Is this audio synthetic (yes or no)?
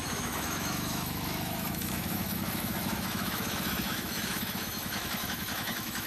yes